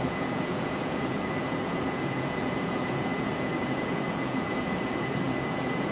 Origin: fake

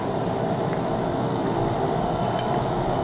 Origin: real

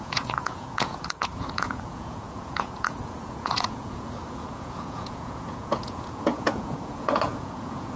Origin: fake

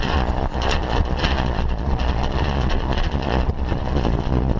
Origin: fake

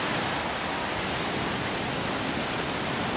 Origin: real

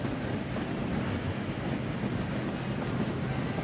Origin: real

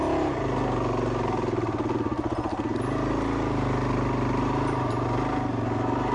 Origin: real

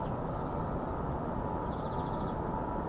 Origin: real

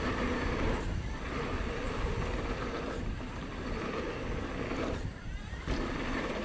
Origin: real